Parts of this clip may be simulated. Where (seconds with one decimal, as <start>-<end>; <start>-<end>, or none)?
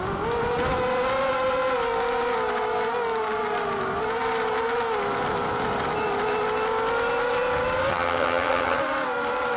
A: 7.9-8.8